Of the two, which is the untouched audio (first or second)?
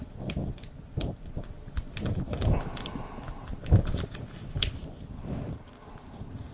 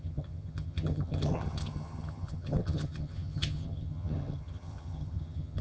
first